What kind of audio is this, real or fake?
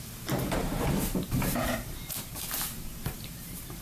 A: fake